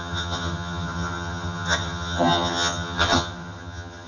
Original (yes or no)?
no